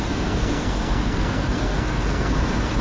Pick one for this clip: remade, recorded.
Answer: remade